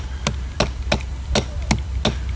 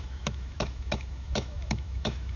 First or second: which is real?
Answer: first